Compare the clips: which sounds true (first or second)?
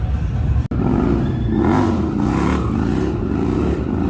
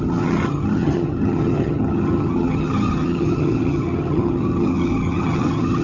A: first